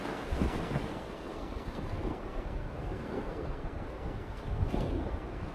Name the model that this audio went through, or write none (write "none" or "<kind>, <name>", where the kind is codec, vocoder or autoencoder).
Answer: codec, SNAC